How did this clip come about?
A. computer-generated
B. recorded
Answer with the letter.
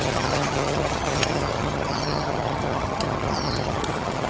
A